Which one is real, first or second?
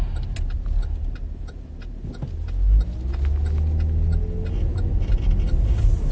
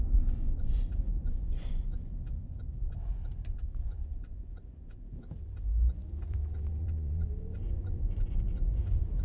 first